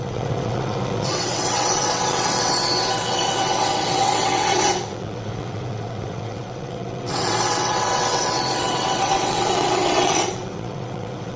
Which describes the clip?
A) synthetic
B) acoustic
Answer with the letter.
A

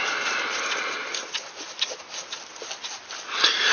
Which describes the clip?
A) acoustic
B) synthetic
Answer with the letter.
A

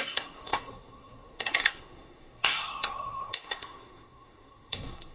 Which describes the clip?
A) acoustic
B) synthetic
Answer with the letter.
B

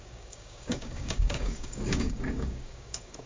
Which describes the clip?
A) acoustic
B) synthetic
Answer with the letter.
B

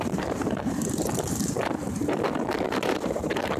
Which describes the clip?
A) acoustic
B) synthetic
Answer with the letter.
B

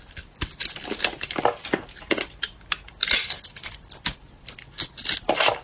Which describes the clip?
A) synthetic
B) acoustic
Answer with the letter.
B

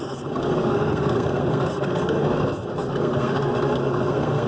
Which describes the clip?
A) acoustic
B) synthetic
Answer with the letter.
B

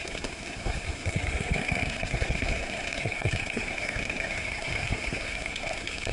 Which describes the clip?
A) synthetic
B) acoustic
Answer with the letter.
A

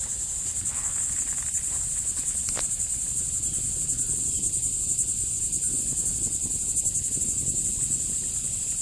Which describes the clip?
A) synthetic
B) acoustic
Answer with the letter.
B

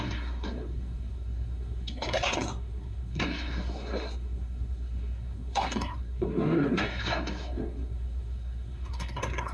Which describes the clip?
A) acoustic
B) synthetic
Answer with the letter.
B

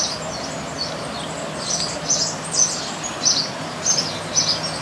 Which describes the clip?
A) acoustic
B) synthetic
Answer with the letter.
A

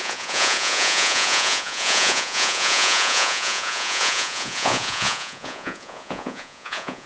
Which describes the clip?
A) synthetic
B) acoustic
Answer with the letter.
A